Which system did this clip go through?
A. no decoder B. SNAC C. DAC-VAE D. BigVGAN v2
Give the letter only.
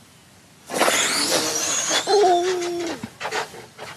A